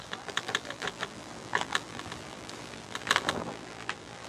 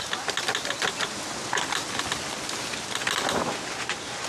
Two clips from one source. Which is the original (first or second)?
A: second